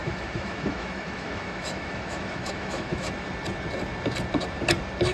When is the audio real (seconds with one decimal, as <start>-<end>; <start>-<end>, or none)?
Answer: 3.1-5.1